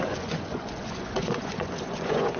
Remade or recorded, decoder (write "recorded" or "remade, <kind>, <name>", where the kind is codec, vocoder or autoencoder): remade, vocoder, Vocos